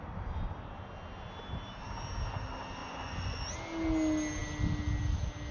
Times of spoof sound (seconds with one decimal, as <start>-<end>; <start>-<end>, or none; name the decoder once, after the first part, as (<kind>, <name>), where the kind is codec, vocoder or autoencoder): 2.8-3.4 (vocoder, Vocos)